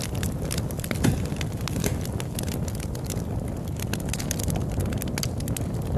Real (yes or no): yes